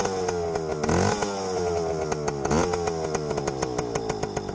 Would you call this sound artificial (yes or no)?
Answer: no